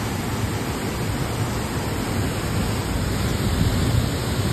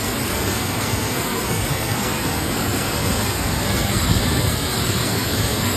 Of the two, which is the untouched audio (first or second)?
first